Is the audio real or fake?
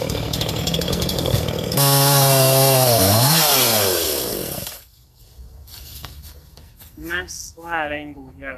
fake